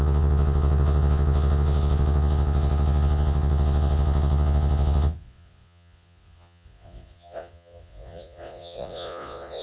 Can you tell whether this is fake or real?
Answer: fake